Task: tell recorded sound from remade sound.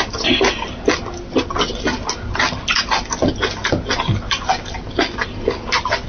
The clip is recorded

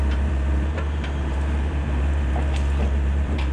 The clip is remade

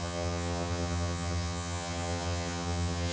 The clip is remade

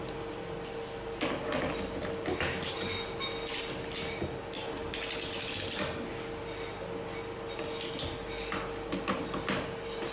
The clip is recorded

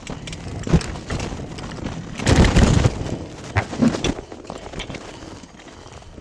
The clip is recorded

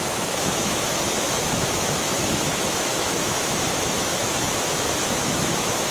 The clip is remade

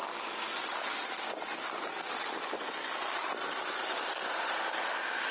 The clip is recorded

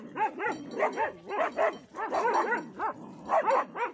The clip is recorded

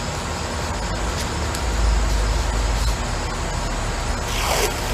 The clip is recorded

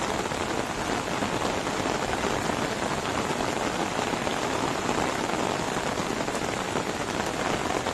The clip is recorded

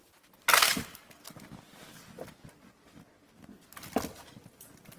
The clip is recorded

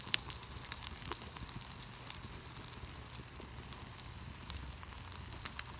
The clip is recorded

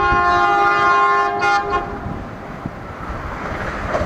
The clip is recorded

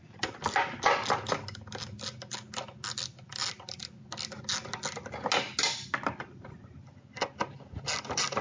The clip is recorded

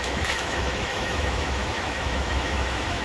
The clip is remade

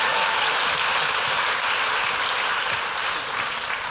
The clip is recorded